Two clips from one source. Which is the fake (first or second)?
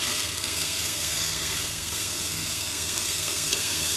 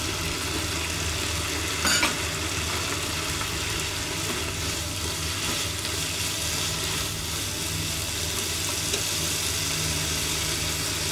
first